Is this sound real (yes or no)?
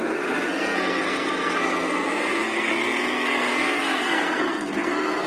no